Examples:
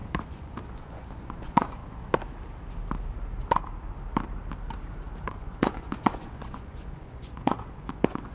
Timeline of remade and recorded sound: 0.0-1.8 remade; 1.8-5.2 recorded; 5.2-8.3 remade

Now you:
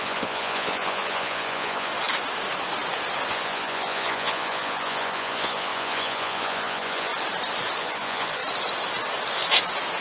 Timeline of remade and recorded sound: 0.0-1.9 remade; 1.9-3.3 recorded; 3.3-7.1 remade; 7.1-7.8 recorded; 7.8-8.4 remade; 8.4-10.0 recorded

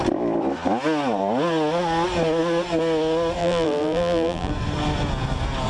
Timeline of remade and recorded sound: 0.0-3.4 recorded; 3.4-4.5 remade; 4.5-5.7 recorded

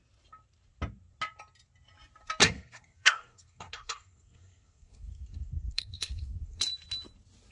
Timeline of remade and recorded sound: 0.0-2.4 recorded; 2.4-6.6 remade; 6.6-7.5 recorded

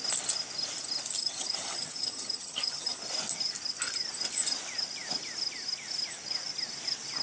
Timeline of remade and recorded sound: 0.0-1.2 recorded; 1.2-3.0 remade; 3.0-7.2 recorded

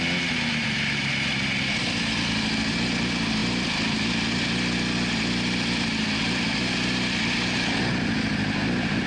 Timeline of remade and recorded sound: 0.0-9.1 recorded

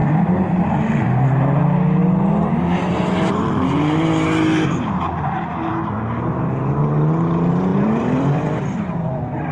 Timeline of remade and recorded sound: 0.0-0.6 remade; 0.6-7.7 recorded; 7.7-9.5 remade

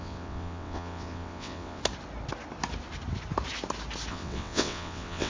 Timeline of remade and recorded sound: 0.0-1.8 remade; 1.8-4.1 recorded; 4.1-5.3 remade